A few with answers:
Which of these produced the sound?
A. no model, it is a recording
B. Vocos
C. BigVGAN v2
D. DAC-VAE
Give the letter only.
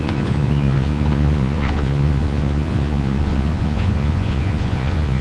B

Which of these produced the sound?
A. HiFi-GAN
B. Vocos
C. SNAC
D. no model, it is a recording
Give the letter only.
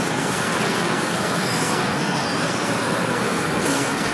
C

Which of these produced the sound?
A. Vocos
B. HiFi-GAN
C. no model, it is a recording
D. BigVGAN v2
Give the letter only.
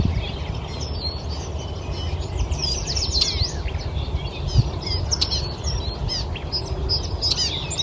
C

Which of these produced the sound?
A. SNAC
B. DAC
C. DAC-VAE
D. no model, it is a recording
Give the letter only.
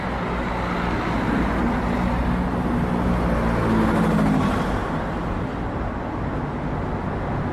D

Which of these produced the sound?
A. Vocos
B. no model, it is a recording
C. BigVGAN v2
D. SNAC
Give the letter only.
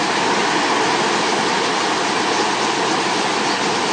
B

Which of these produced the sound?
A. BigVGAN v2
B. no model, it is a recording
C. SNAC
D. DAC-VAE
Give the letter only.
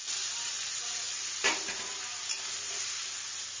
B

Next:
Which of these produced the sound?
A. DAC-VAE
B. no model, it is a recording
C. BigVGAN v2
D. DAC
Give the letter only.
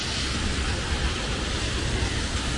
B